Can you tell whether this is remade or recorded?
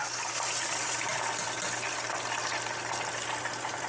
recorded